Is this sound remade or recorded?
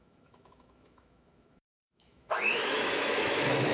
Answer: remade